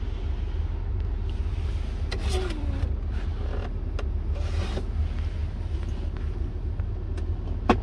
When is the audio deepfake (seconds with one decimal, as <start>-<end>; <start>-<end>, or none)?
none

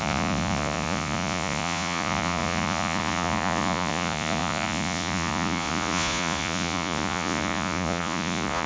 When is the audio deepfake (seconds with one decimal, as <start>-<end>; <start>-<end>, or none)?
0.0-8.7

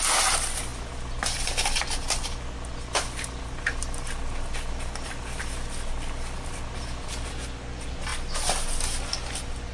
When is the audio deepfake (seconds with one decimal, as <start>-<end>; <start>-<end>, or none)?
none

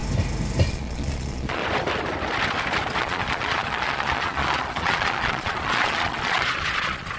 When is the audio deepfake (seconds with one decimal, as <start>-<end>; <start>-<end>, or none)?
0.7-1.6; 3.0-7.2

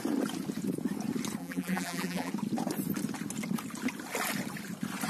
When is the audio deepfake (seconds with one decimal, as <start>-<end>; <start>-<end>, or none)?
1.4-2.3